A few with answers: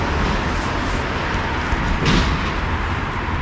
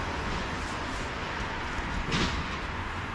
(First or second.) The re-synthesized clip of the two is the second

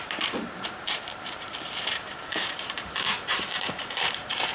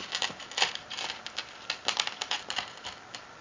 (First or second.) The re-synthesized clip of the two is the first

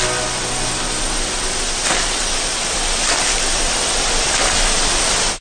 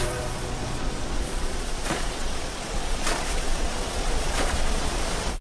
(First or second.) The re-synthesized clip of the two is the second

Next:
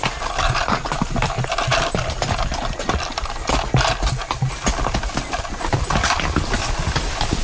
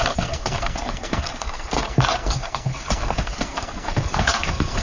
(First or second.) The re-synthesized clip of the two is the second